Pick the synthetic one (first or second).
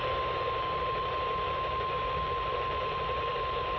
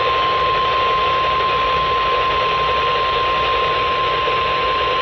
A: first